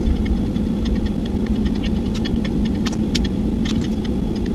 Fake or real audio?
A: real